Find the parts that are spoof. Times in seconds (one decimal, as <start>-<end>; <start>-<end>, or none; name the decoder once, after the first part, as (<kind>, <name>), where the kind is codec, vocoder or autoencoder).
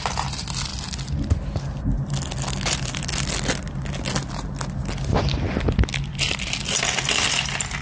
none